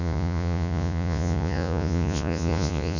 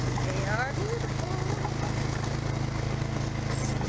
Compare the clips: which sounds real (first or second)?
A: second